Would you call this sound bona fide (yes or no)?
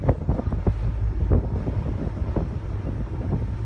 yes